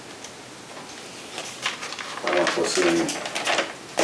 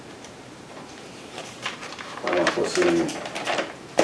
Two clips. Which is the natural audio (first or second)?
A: first